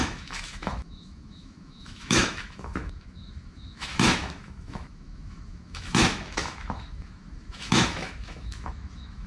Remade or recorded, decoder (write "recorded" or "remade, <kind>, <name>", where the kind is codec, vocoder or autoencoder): remade, autoencoder, DAC-VAE